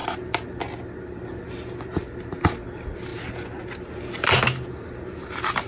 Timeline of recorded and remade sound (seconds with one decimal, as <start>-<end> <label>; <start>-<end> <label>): 0.0-5.7 recorded